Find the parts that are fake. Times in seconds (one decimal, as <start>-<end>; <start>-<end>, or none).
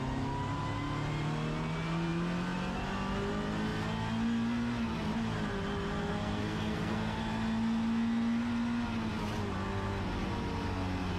6.1-7.2